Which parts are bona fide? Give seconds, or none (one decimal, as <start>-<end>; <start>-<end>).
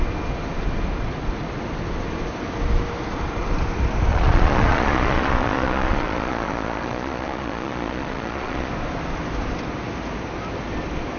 0.0-4.1; 8.7-11.2